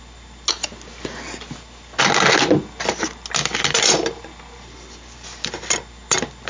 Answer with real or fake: real